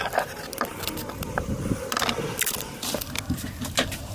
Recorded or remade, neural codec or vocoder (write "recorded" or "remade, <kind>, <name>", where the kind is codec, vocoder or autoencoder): recorded